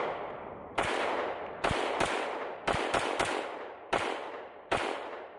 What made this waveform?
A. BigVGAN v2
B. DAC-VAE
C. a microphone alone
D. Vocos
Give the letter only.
A